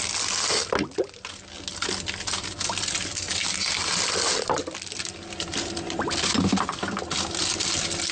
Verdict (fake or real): real